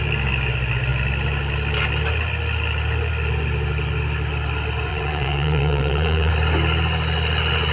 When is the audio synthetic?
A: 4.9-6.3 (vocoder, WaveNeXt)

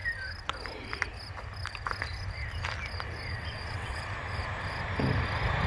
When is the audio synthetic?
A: 3.3-4.0 (vocoder, WaveNeXt)

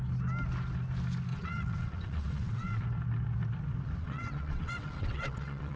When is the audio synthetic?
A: 1.3-2.8 (vocoder, WaveNeXt); 4.0-5.8

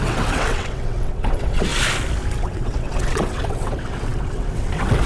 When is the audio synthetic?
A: 0.0-1.7 (vocoder, WaveNeXt); 2.4-5.1

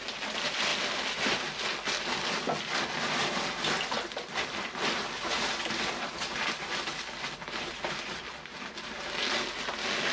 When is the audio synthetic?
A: none

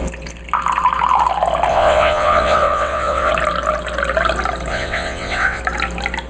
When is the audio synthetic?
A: 1.7-3.3 (vocoder, WaveNeXt); 4.7-5.6